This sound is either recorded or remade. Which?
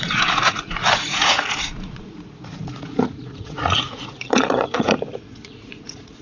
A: remade